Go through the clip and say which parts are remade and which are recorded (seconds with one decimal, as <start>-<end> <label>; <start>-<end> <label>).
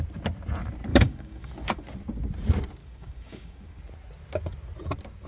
0.0-0.9 recorded; 0.9-1.5 remade; 1.5-2.8 recorded; 2.8-3.8 remade; 3.8-5.3 recorded